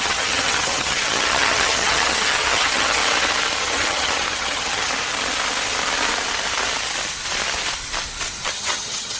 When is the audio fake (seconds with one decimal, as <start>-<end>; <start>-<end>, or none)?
0.0-3.0; 3.6-4.9; 8.5-9.2

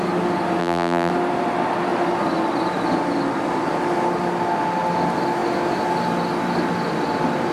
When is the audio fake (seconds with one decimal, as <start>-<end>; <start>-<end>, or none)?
0.6-1.1

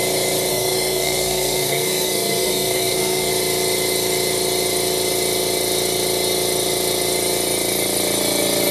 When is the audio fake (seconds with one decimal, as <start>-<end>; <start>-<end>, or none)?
0.5-3.3